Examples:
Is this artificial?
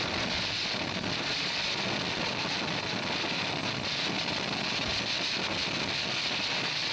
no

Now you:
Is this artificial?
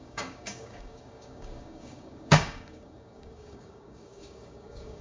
yes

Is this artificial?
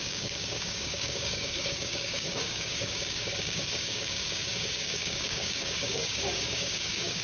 yes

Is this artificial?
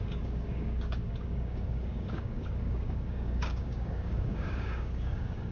yes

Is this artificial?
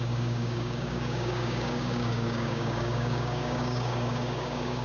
yes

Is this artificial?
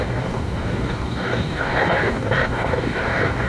yes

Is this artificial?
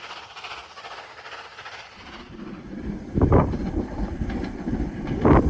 no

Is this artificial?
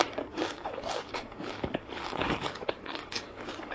yes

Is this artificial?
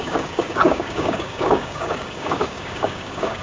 yes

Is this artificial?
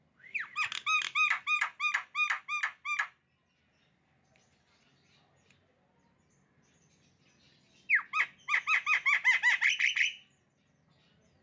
no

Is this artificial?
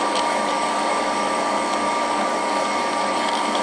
yes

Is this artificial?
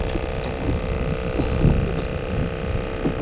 no